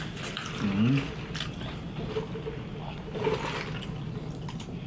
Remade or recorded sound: recorded